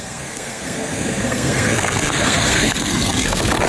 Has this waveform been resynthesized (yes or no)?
yes